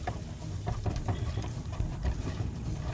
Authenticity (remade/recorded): remade